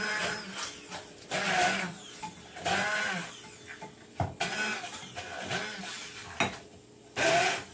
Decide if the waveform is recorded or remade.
recorded